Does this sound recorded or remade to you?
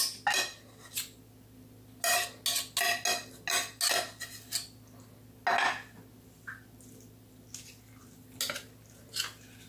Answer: recorded